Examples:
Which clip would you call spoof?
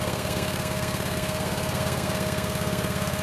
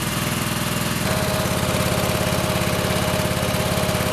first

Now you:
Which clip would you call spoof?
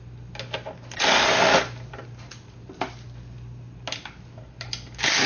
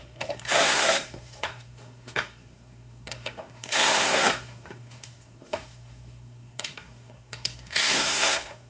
second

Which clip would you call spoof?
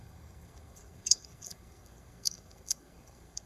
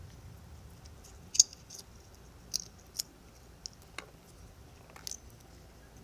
first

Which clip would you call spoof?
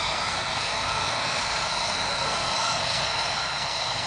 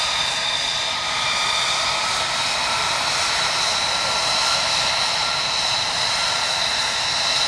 first